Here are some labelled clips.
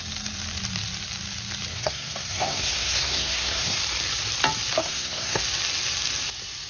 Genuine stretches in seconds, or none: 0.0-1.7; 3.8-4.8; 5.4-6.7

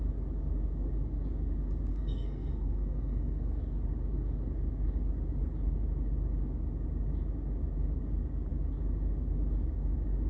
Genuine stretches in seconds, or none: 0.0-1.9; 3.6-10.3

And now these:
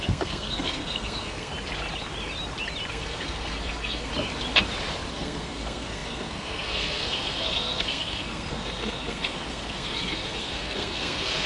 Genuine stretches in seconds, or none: 1.5-2.9; 4.1-5.1

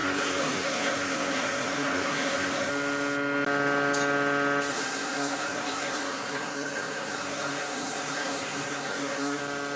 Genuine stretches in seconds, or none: 2.7-4.7; 9.4-9.8

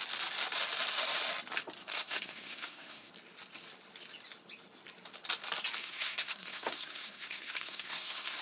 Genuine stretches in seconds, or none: 0.0-1.8; 3.1-5.8

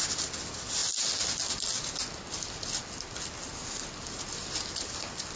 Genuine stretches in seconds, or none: 0.0-5.4

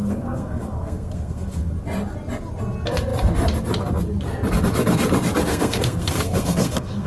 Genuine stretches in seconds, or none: 1.7-5.5